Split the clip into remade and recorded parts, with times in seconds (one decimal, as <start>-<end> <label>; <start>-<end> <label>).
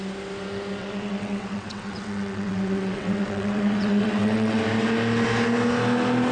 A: 0.0-0.8 recorded; 0.8-4.6 remade; 4.6-6.3 recorded